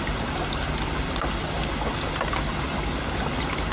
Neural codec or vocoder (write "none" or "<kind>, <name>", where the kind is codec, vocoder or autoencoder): none